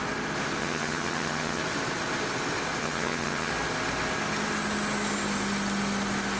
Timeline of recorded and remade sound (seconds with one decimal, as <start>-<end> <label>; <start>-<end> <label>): 0.0-0.6 recorded; 0.6-1.6 remade; 1.6-2.8 recorded; 2.8-3.5 remade; 3.5-6.4 recorded